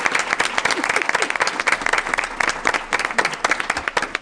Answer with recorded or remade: recorded